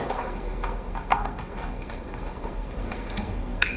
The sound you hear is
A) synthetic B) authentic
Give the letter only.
A